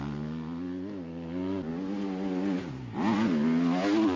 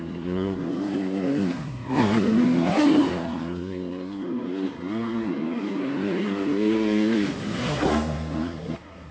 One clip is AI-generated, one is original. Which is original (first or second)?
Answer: first